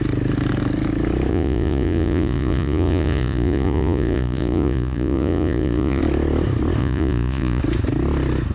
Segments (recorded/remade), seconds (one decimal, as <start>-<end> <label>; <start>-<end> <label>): 0.0-1.3 recorded; 1.3-6.0 remade; 6.0-6.8 recorded; 6.8-7.6 remade; 7.6-8.5 recorded